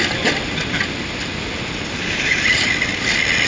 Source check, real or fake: real